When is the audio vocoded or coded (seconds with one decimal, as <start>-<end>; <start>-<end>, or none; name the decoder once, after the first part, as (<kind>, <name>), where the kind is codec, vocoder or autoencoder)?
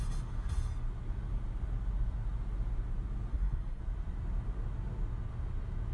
3.3-3.8 (codec, SNAC)